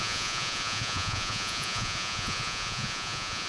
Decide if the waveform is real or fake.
fake